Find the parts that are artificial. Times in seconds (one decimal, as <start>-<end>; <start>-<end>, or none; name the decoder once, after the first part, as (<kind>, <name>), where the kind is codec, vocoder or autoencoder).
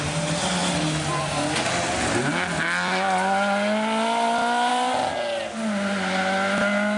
none